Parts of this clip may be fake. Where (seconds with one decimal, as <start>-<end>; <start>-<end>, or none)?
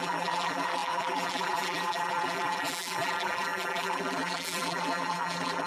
0.0-5.7